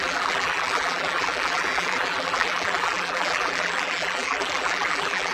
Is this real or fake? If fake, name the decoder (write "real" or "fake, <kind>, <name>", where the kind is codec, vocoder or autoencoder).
fake, vocoder, BigVGAN v2